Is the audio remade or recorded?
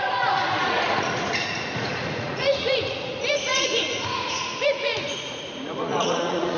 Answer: remade